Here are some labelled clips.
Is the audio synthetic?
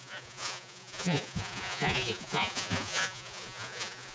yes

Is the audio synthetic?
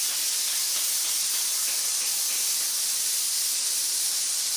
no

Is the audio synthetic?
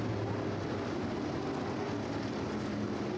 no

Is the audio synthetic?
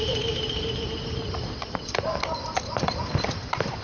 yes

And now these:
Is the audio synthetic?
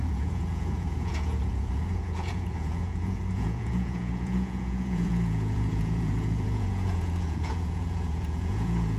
yes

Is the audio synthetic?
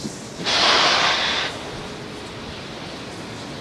no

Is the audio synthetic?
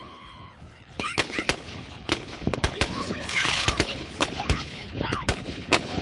yes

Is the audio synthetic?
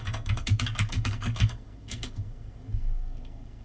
yes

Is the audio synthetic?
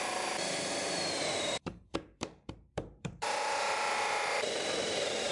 yes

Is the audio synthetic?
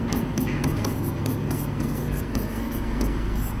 yes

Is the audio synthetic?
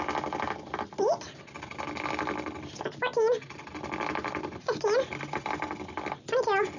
no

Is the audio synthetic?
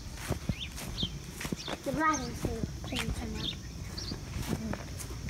no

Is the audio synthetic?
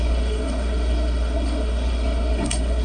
yes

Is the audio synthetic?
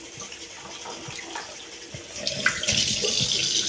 no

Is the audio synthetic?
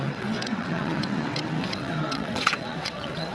yes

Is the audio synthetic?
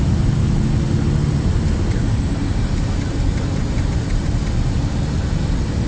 no